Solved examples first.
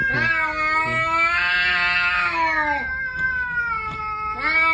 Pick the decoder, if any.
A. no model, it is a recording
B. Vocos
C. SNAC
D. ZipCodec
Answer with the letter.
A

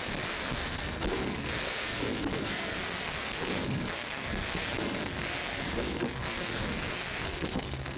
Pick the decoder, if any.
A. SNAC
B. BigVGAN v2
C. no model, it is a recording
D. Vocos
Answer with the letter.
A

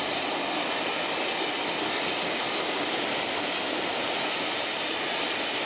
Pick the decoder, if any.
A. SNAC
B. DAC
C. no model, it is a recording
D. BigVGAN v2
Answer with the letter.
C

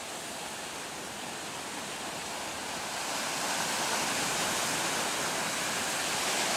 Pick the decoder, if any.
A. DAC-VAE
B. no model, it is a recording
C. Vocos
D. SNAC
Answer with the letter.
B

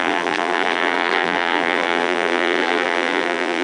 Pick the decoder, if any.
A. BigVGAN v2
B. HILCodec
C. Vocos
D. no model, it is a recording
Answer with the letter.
A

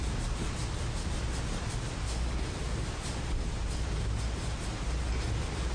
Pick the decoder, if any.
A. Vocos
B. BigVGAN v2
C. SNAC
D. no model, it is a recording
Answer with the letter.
D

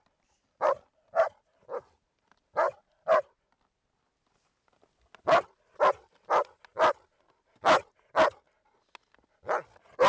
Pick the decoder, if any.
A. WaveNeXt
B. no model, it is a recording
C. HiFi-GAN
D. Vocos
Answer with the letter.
B